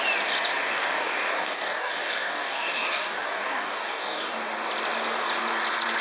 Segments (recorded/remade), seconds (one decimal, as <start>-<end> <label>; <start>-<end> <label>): 0.0-0.7 recorded; 0.7-4.3 remade; 4.3-6.0 recorded